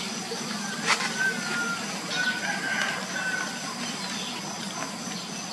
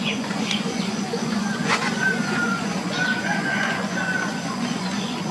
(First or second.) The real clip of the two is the first